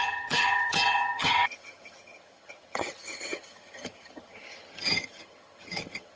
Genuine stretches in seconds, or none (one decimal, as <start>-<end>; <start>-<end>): none